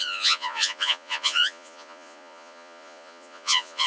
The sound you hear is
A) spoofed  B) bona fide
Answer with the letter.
A